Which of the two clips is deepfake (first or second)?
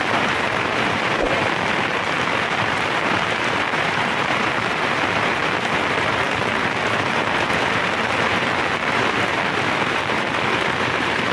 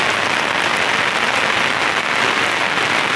first